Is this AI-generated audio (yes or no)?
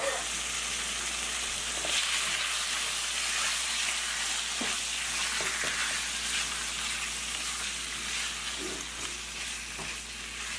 no